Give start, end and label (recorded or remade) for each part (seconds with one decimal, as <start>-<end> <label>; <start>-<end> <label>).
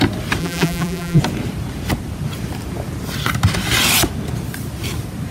0.0-0.4 recorded; 0.4-1.2 remade; 1.2-5.3 recorded